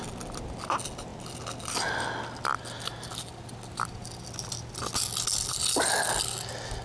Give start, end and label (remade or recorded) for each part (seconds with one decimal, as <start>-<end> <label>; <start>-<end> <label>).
0.0-6.8 recorded